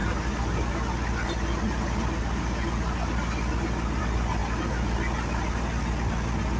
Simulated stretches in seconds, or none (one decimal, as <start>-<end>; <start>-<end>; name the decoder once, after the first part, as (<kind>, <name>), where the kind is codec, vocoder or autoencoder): none